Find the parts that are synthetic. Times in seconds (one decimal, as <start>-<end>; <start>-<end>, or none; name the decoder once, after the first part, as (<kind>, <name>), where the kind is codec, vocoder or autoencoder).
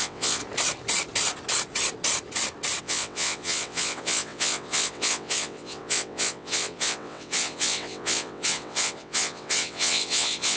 0.0-0.4 (vocoder, WaveNeXt); 2.8-10.6